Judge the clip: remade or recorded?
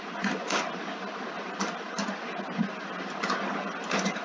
recorded